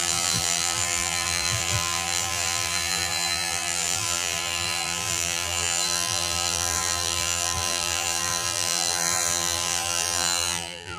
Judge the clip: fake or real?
fake